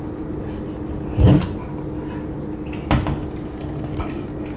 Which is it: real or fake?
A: real